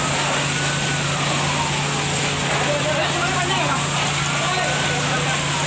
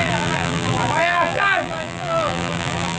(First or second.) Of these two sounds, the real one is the first